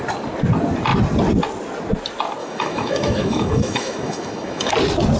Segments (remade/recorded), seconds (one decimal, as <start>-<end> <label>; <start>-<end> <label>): 0.0-2.4 recorded; 2.4-4.7 remade; 4.7-5.2 recorded